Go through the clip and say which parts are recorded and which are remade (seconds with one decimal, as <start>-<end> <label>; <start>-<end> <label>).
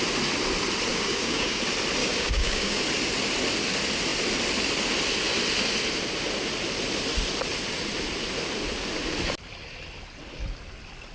0.0-0.9 recorded; 0.9-1.6 remade; 1.6-2.0 recorded; 2.0-2.8 remade; 2.8-11.1 recorded